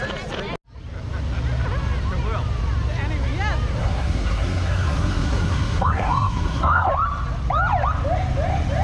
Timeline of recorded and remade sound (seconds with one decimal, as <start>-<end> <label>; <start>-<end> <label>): 0.0-3.8 recorded; 3.8-6.9 remade; 6.9-8.8 recorded